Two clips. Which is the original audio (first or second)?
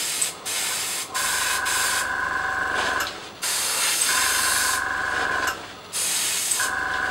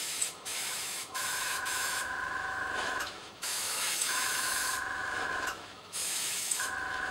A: first